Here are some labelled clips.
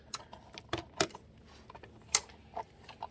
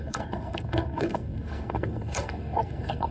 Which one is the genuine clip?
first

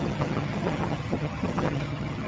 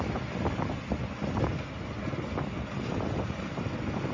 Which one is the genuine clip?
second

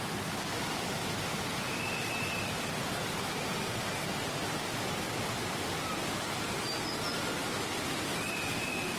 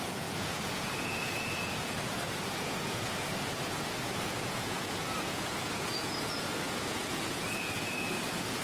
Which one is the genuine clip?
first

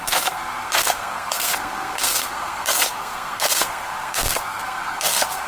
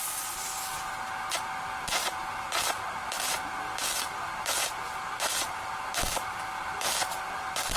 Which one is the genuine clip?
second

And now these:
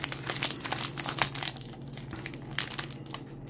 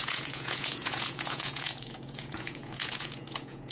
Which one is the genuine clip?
first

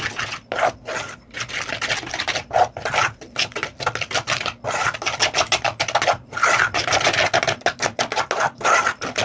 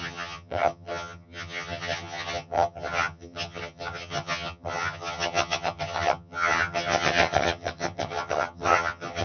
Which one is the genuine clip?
first